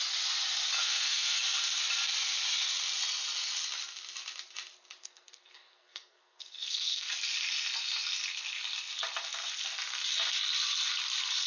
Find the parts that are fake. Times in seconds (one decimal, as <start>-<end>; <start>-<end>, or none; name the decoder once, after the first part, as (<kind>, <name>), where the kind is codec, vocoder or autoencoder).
0.8-1.4 (codec, SNAC); 5.0-7.1